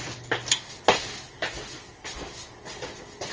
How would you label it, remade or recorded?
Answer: recorded